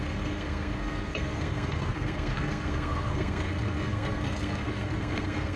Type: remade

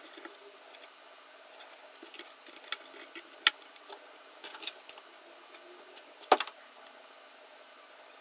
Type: recorded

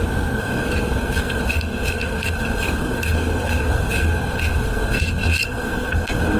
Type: remade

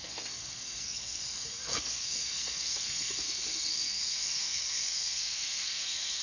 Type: remade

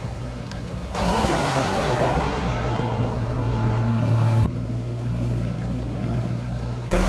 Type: remade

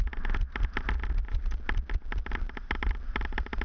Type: recorded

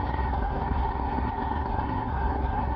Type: remade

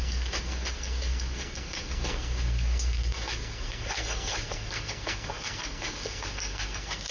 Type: remade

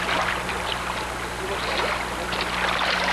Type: recorded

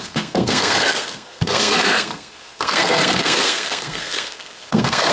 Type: remade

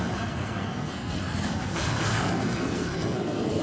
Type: remade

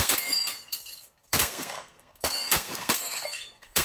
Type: remade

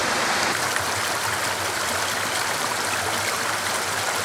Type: recorded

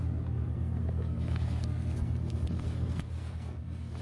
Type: remade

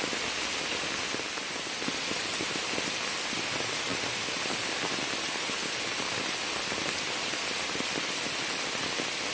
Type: recorded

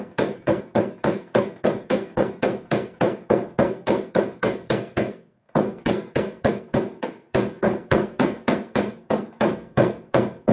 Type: remade